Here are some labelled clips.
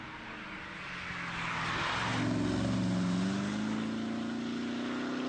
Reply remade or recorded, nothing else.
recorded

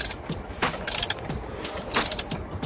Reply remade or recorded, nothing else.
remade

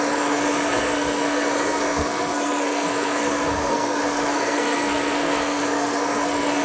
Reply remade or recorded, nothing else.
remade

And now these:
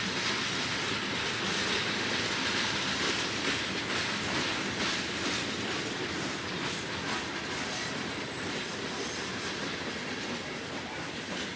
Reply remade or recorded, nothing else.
remade